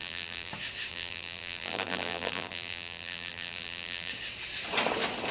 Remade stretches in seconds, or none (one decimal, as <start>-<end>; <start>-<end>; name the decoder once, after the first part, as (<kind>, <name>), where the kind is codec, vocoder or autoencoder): 0.0-0.5 (vocoder, BigVGAN v2); 0.9-4.1